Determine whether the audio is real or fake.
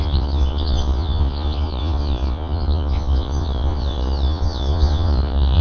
fake